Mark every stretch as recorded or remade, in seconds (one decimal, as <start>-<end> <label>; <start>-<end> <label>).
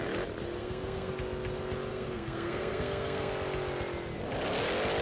0.0-0.6 recorded; 0.6-1.1 remade; 1.1-1.9 recorded; 1.9-3.3 remade; 3.3-5.0 recorded